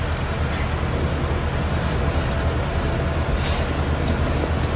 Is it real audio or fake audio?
real